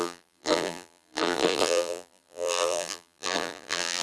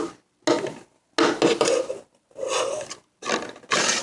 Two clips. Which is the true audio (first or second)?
second